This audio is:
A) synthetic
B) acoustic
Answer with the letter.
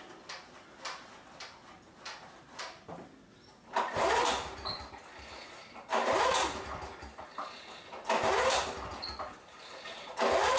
B